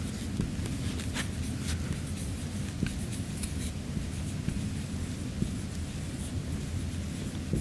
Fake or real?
real